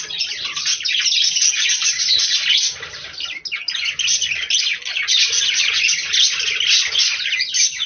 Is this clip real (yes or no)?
yes